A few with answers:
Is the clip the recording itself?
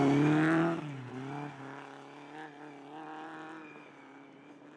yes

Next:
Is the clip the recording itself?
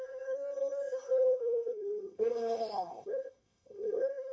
no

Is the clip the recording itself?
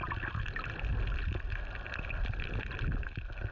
yes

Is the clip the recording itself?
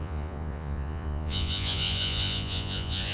no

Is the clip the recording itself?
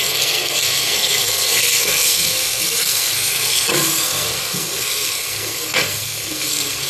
no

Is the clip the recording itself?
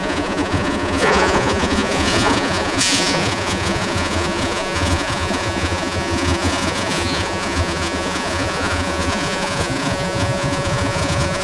no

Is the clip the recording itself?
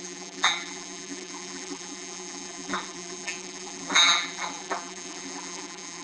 no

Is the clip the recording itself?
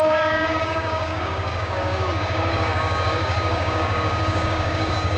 no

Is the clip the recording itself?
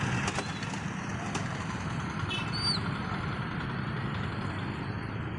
yes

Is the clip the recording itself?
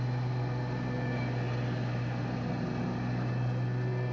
yes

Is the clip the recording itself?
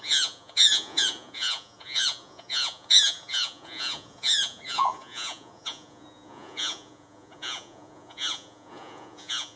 no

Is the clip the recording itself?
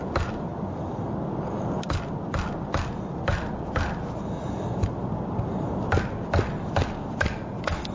yes